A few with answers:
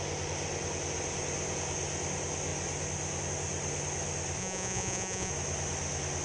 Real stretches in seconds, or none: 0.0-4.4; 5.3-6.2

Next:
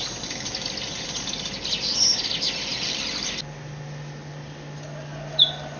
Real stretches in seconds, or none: 0.0-5.8

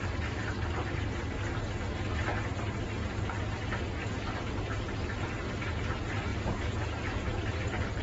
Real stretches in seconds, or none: 0.0-6.3; 7.3-8.0

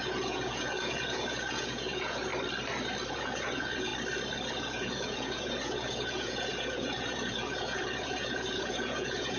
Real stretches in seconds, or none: 2.3-3.1; 3.9-4.5